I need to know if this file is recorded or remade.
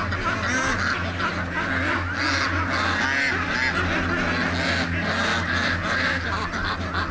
recorded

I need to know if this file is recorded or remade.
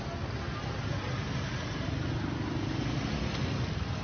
recorded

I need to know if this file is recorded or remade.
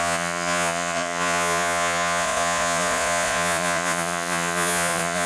remade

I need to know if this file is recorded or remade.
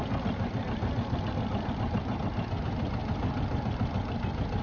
recorded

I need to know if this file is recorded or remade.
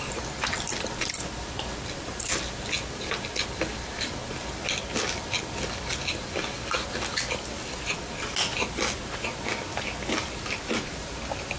recorded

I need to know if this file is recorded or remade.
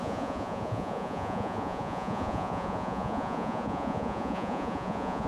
remade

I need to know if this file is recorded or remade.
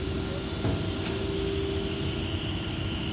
recorded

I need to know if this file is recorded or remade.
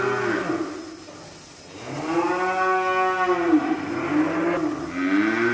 recorded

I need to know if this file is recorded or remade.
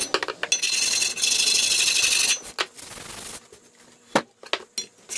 recorded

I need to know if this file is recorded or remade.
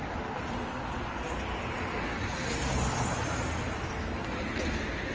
recorded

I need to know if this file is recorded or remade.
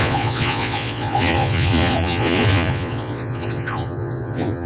remade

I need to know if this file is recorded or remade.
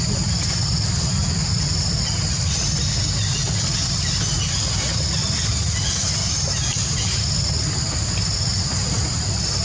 recorded